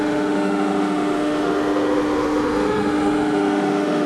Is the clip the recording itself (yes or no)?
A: no